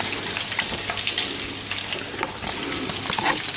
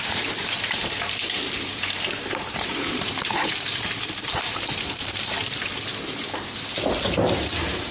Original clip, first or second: first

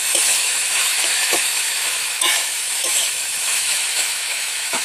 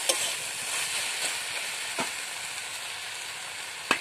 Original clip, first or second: second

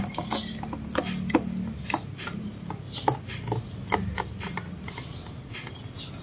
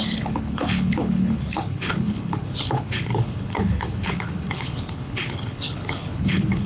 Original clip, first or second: first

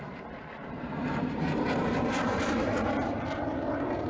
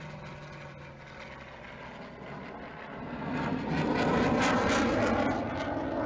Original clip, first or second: second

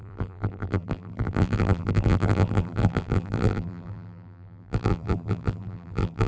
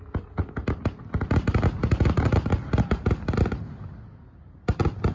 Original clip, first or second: second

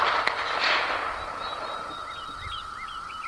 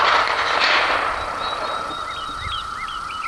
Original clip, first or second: first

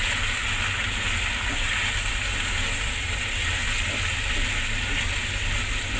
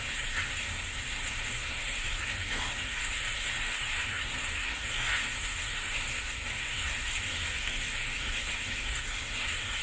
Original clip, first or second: first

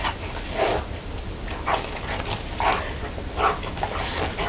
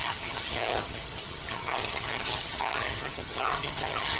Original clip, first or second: first